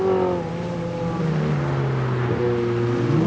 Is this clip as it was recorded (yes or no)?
yes